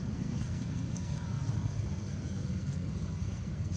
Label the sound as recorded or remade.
remade